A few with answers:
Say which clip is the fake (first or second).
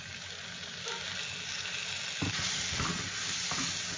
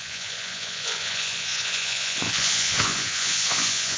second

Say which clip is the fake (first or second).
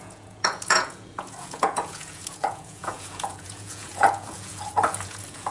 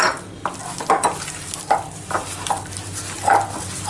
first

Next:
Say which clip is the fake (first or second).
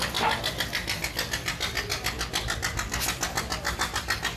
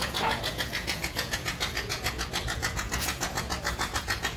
second